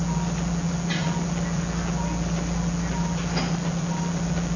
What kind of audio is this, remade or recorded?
recorded